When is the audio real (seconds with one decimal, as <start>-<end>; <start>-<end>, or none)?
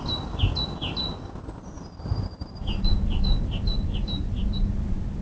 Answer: 0.0-5.2